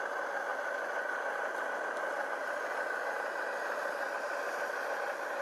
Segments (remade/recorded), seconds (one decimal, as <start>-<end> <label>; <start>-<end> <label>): 0.0-5.4 recorded